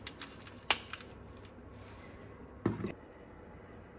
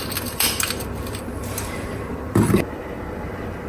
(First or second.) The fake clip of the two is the second